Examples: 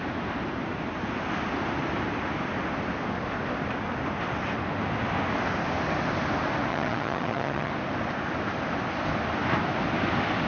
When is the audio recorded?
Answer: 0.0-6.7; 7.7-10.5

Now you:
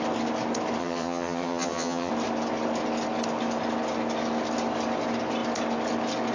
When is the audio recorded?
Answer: 0.0-0.8; 2.1-6.3

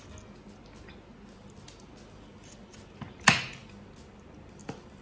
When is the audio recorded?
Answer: 0.0-5.0